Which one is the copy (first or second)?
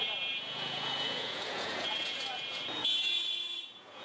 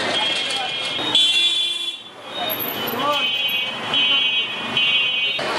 first